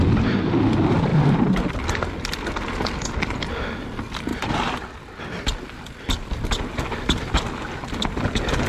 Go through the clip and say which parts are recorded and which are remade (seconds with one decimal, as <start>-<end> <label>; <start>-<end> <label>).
0.0-8.7 recorded

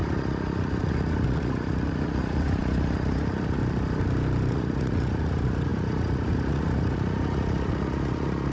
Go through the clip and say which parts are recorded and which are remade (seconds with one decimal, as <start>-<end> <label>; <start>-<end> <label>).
0.0-3.6 remade; 3.6-4.5 recorded; 4.5-8.5 remade

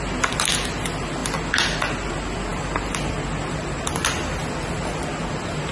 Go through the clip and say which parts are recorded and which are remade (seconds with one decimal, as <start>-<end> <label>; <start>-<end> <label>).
0.0-5.7 recorded

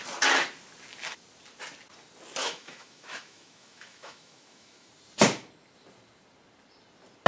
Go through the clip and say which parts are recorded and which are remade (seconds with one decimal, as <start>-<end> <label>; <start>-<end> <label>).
0.0-2.4 recorded; 2.4-4.9 remade; 4.9-7.3 recorded